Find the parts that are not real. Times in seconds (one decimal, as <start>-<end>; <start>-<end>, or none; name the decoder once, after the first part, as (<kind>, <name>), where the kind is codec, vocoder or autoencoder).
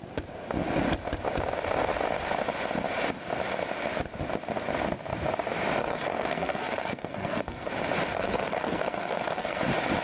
5.8-7.7 (codec, SNAC); 8.1-9.6